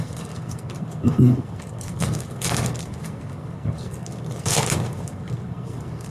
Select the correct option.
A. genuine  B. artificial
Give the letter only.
B